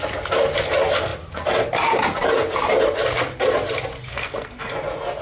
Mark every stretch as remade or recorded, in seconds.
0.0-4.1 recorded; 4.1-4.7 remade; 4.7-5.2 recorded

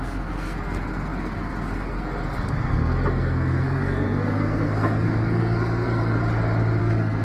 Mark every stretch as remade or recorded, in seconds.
0.0-6.2 remade; 6.2-6.8 recorded; 6.8-7.2 remade

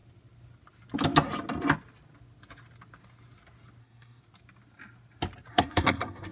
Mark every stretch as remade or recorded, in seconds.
0.0-3.8 recorded; 3.8-4.2 remade; 4.2-5.5 recorded; 5.5-6.3 remade

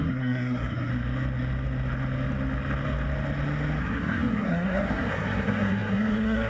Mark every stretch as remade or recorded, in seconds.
0.0-0.9 remade; 0.9-3.8 recorded; 3.8-6.5 remade

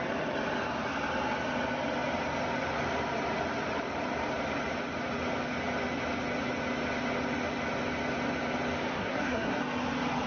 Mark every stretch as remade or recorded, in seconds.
0.0-8.9 recorded; 8.9-9.6 remade; 9.6-10.3 recorded

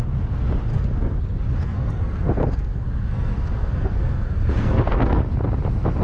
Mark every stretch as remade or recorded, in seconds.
0.0-0.7 recorded; 0.7-1.2 remade; 1.2-1.6 recorded; 1.6-5.2 remade; 5.2-6.0 recorded

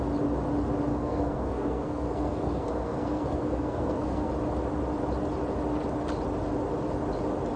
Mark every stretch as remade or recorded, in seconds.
0.0-0.9 recorded; 0.9-4.3 remade; 4.3-7.6 recorded

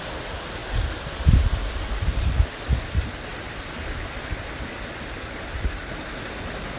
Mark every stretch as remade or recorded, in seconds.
0.0-6.8 recorded